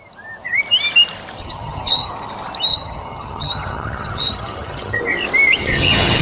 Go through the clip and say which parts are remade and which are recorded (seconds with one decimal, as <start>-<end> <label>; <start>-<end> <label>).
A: 0.0-1.4 recorded; 1.4-2.1 remade; 2.1-2.7 recorded; 2.7-5.0 remade; 5.0-5.6 recorded; 5.6-6.2 remade